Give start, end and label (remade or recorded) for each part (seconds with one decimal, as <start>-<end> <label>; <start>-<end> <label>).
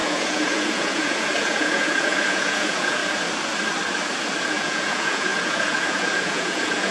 0.0-3.0 remade; 3.0-4.5 recorded; 4.5-6.9 remade